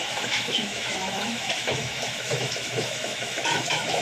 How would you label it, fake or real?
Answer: fake